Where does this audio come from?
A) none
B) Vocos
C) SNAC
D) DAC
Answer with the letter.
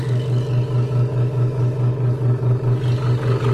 D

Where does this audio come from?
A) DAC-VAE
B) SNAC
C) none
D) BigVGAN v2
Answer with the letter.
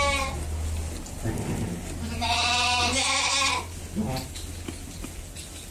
C